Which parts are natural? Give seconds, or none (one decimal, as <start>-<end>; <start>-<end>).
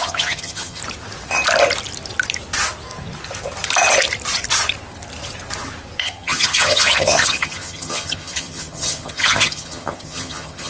0.8-6.0